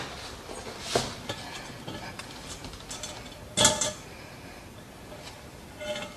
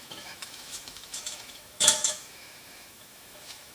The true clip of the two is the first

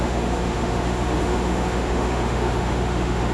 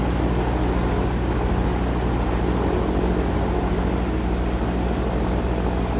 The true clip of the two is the second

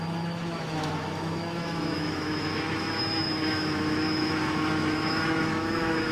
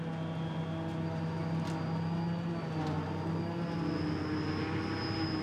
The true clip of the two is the second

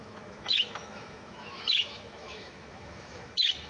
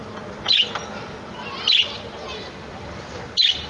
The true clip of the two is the second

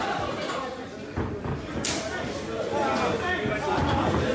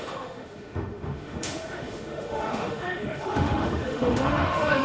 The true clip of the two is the first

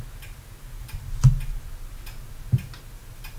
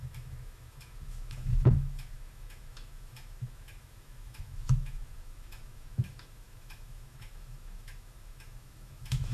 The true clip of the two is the first